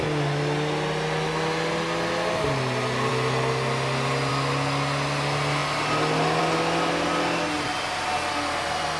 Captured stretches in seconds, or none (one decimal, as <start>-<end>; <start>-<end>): 0.0-9.0